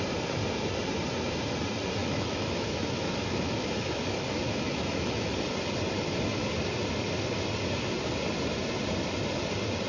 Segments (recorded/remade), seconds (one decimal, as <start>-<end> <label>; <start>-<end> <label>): 0.0-2.0 recorded; 2.0-5.3 remade; 5.3-9.9 recorded